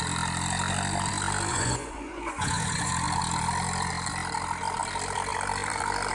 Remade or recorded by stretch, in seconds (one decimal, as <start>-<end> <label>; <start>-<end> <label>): 0.0-1.5 recorded; 1.5-2.9 remade; 2.9-6.1 recorded